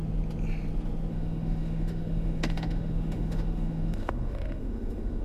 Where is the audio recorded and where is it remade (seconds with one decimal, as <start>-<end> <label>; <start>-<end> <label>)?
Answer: 0.0-1.1 recorded; 1.1-5.2 remade